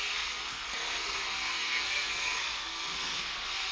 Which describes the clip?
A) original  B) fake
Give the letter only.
B